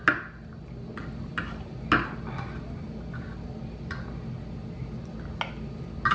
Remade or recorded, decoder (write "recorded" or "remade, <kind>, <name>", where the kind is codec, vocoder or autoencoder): recorded